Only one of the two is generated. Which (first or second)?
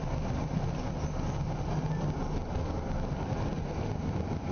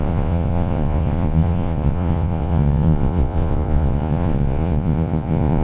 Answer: second